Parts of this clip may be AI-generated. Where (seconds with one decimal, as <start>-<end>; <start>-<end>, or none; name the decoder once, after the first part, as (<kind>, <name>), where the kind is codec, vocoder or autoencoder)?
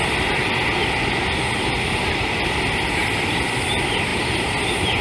none